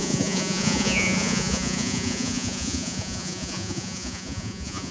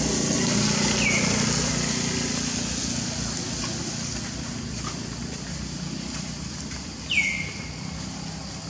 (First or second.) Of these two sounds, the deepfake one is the first